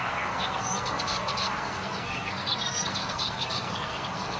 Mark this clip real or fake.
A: fake